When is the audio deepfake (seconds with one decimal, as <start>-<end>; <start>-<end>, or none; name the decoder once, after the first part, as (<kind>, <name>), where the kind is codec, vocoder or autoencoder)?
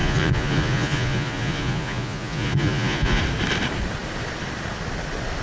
0.0-3.2 (vocoder, Vocos)